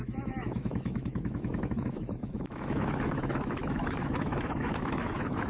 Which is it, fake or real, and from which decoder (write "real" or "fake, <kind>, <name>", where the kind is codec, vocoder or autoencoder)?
fake, autoencoder, DAC-VAE